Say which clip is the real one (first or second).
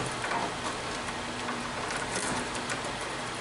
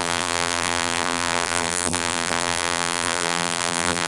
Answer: first